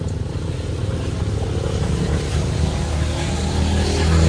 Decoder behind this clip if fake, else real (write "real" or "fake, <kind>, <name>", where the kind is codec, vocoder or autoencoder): real